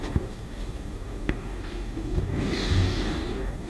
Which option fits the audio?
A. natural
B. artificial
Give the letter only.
B